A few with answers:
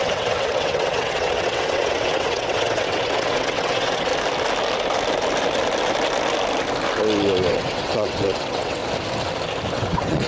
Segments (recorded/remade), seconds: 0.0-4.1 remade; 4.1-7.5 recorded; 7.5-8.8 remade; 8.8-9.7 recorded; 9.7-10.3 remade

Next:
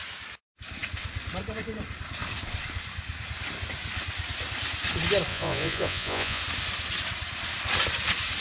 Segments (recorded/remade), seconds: 0.0-5.3 recorded; 5.3-6.4 remade; 6.4-8.4 recorded